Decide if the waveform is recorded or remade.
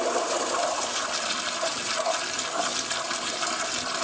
recorded